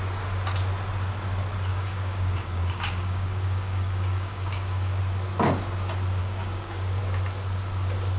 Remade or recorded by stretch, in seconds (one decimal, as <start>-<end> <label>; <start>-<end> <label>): 0.0-1.7 recorded; 1.7-5.0 remade; 5.0-6.2 recorded; 6.2-7.0 remade; 7.0-8.2 recorded